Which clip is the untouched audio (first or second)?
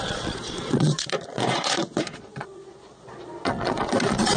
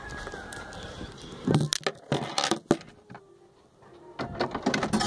second